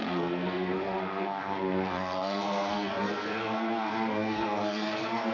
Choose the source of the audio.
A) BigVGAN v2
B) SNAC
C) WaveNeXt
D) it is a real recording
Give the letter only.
B